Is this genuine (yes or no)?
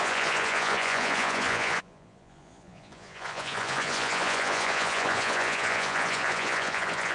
no